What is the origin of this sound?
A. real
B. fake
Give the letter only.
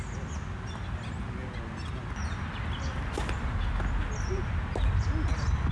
A